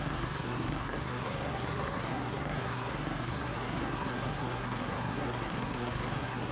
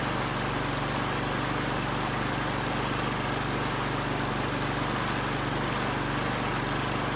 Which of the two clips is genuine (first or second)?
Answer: second